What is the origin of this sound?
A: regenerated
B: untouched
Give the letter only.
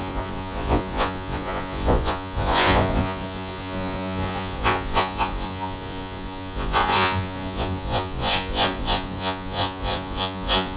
A